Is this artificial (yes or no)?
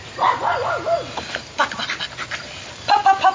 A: no